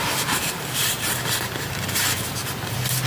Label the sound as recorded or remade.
remade